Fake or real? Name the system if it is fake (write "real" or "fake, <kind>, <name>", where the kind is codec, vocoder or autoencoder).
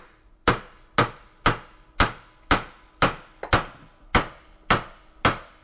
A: real